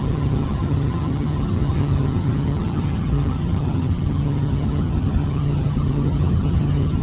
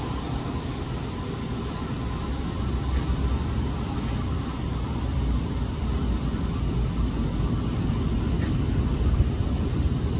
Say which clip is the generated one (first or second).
first